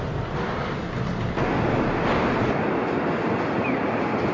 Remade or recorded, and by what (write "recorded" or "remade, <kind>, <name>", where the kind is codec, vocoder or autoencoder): recorded